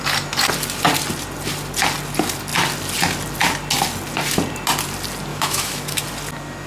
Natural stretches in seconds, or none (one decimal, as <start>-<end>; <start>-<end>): 0.0-5.3; 6.0-6.7